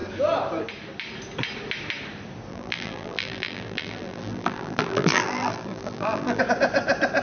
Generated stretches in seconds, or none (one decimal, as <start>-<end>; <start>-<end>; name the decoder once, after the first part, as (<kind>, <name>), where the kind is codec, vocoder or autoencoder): 2.5-6.4 (vocoder, BigVGAN v2)